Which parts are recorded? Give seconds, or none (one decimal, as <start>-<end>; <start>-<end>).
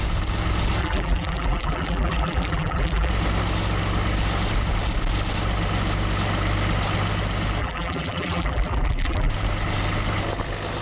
0.0-0.8; 3.1-7.6; 9.3-10.8